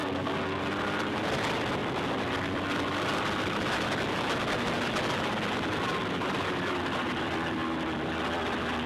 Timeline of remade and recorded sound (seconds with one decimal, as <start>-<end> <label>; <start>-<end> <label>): 0.0-0.6 remade; 0.6-8.9 recorded